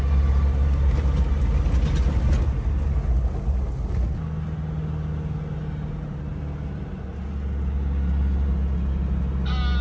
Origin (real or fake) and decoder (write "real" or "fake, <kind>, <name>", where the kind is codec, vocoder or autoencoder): real